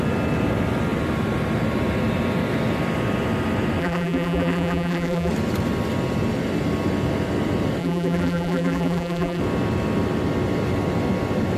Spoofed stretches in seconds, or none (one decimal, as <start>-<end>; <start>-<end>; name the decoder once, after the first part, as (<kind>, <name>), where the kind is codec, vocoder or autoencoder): 3.8-5.3 (vocoder, BigVGAN v2); 7.8-9.4